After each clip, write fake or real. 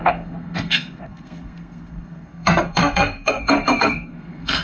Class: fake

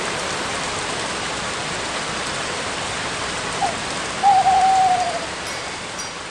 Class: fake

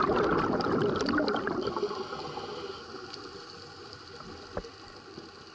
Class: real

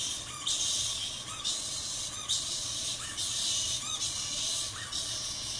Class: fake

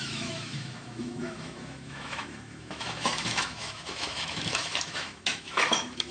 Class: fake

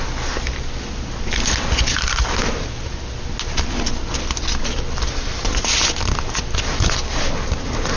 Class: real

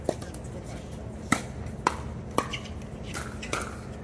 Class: real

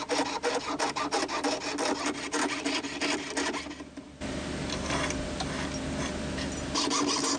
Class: real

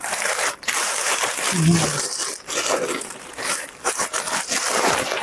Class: fake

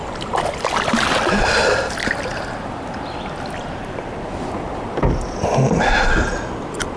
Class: real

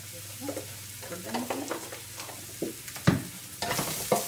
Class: real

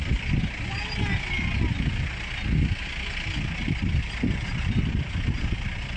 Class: real